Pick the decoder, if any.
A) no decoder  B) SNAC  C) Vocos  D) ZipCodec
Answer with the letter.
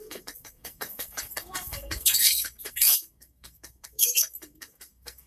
B